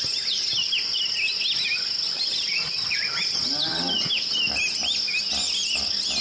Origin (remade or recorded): recorded